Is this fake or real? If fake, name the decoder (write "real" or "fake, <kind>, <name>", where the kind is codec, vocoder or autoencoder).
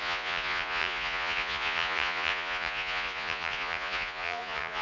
fake, vocoder, Vocos